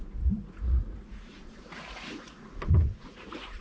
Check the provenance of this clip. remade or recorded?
remade